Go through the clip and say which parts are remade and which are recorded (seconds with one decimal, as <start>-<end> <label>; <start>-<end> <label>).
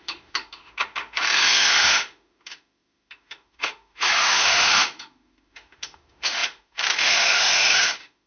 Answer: 0.0-8.3 remade